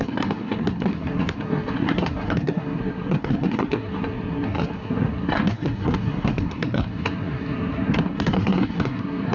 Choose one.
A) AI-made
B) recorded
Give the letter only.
A